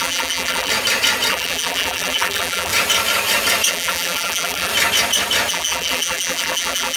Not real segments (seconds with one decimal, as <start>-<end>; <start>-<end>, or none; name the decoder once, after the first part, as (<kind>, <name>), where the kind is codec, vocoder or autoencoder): 0.0-0.7 (vocoder, BigVGAN v2); 1.3-2.7; 3.7-4.7; 5.5-7.0